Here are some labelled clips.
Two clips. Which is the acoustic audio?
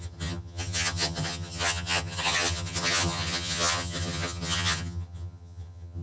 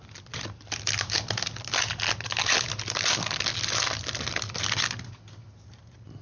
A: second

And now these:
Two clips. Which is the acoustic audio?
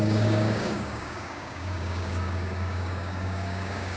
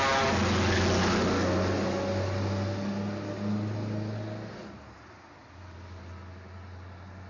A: second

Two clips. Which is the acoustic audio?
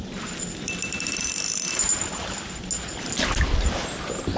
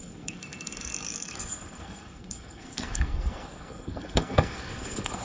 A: first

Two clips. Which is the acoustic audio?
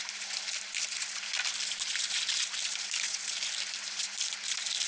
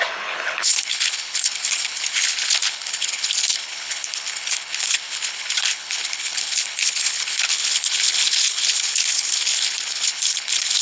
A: first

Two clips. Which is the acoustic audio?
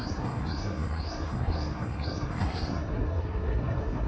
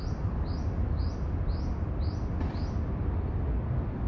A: second